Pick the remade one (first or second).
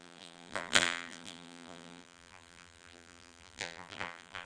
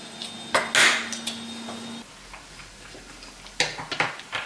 first